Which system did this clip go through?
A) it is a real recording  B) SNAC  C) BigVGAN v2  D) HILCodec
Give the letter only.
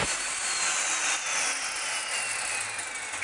A